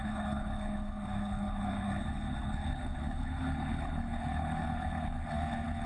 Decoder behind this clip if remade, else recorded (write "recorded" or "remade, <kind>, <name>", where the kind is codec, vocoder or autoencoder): remade, codec, HILCodec